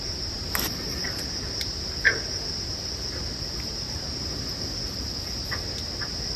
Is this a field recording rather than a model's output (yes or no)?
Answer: yes